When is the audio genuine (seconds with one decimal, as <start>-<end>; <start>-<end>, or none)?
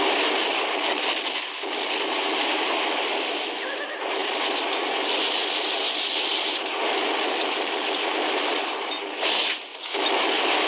0.0-10.7